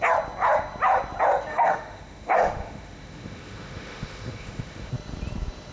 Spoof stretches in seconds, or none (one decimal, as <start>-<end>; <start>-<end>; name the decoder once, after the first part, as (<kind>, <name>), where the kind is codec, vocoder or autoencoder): 1.5-4.9 (autoencoder, DAC-VAE)